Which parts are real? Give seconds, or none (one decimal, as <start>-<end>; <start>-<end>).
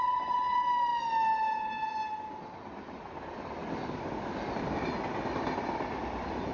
0.0-6.5